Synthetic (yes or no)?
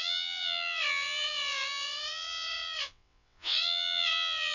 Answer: yes